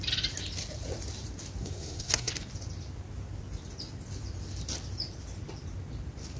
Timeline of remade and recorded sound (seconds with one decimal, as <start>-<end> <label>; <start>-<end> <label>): 0.0-1.6 recorded; 1.6-2.3 remade; 2.3-6.4 recorded